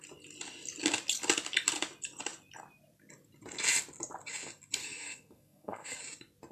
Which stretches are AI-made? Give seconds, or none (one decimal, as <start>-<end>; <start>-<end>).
4.8-6.0